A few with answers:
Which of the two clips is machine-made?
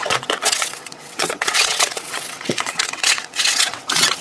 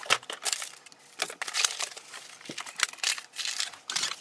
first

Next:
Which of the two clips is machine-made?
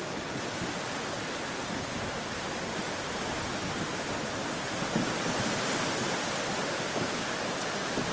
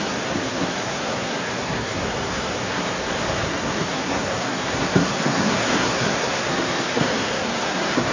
second